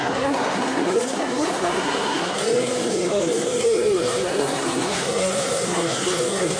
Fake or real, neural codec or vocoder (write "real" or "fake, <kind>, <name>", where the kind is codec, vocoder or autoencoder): fake, codec, SNAC